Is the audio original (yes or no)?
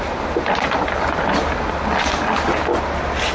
yes